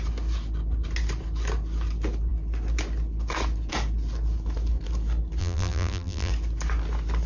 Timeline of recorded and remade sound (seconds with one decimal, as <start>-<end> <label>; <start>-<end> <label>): 0.0-5.4 recorded; 5.4-6.3 remade; 6.3-7.3 recorded